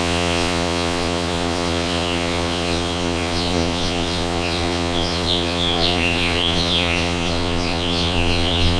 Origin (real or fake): fake